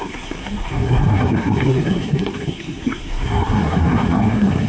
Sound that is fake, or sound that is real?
fake